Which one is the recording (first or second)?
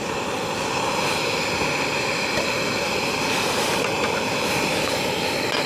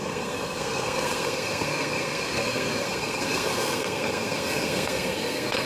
first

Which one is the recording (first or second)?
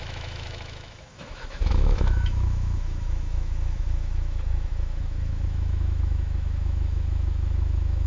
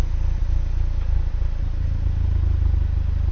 second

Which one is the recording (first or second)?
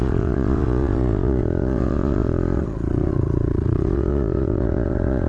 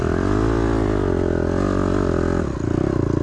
second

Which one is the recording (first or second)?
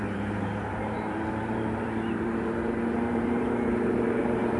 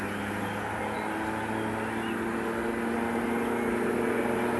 second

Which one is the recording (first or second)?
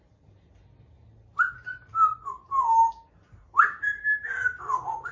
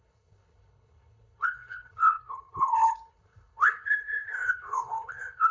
first